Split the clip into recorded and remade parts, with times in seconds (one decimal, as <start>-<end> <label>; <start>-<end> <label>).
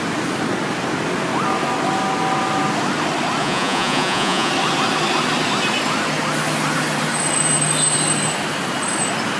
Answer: 0.0-3.4 recorded; 3.4-4.5 remade; 4.5-9.4 recorded